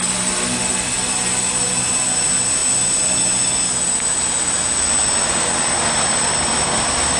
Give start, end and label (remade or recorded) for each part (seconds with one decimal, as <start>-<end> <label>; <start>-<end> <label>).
0.0-7.2 recorded